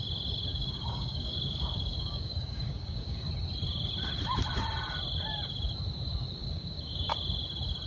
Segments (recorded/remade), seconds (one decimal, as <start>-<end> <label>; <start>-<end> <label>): 0.0-0.5 recorded; 0.5-3.3 remade; 3.3-6.4 recorded; 6.4-7.1 remade; 7.1-7.9 recorded